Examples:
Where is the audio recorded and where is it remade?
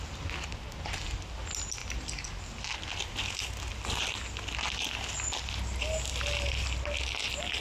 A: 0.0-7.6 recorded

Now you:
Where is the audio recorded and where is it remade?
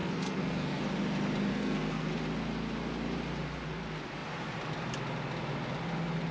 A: 0.0-0.8 remade; 0.8-1.5 recorded; 1.5-2.1 remade; 2.1-6.3 recorded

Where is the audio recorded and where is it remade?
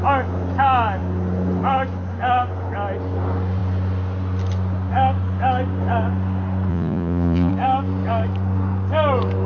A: 0.0-6.7 recorded; 6.7-7.5 remade; 7.5-9.5 recorded